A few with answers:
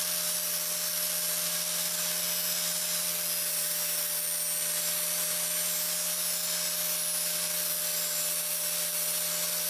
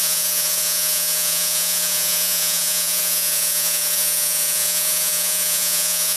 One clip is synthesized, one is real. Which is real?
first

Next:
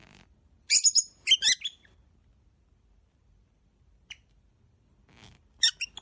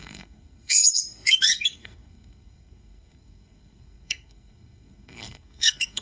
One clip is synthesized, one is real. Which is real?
first